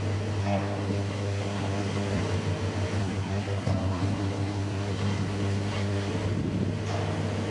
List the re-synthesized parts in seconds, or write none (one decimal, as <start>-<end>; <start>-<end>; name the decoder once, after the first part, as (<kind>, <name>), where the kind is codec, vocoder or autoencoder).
0.4-2.2 (codec, SNAC); 3.0-6.1